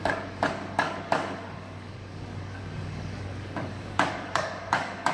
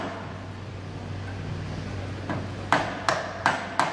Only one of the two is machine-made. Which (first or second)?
first